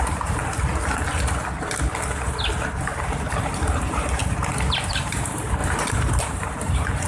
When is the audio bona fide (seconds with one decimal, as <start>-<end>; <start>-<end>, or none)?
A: 0.4-3.3; 4.2-4.8